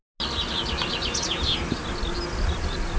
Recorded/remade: recorded